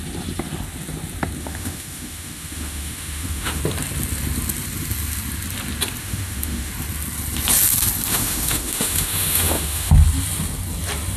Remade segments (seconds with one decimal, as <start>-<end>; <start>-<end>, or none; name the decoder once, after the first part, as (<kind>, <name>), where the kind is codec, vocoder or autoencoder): 1.4-3.6 (autoencoder, DAC-VAE); 6.0-6.7; 8.1-9.9